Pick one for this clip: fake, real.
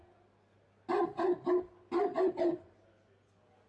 real